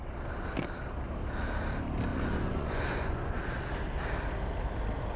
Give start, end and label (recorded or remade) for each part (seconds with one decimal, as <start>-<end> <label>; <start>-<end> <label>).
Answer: 0.0-2.1 recorded; 2.1-3.4 remade; 3.4-5.2 recorded